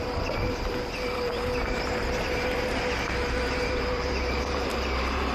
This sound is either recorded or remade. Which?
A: remade